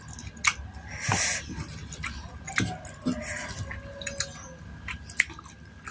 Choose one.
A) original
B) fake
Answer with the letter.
A